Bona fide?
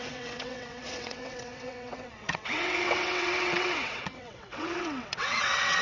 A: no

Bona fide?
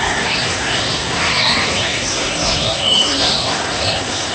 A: no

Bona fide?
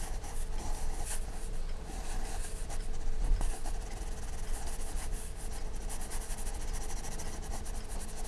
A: yes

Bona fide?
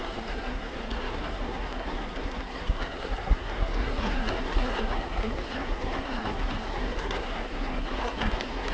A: no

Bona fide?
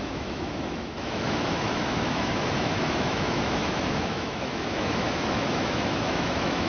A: no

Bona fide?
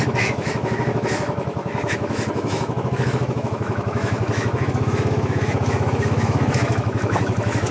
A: no